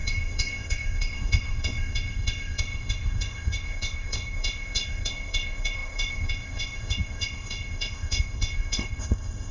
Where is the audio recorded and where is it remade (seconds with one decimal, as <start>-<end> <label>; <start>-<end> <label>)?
0.0-9.5 remade